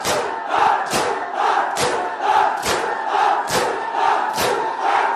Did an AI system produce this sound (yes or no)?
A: no